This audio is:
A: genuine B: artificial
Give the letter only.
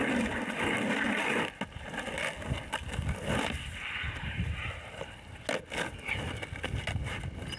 A